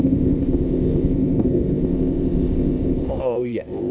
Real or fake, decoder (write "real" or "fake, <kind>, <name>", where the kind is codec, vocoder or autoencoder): fake, codec, ZipCodec